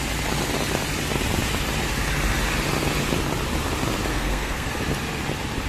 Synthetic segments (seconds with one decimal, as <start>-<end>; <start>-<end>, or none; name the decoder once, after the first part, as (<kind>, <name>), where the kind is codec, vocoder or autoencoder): 4.1-4.7 (codec, SNAC)